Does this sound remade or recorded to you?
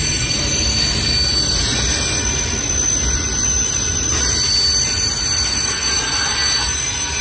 recorded